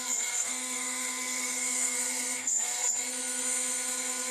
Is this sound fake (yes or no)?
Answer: yes